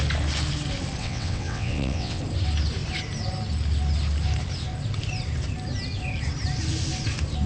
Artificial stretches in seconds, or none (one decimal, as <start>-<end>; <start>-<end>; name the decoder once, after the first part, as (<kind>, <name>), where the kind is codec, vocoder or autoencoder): 1.0-2.2 (vocoder, WaveNeXt)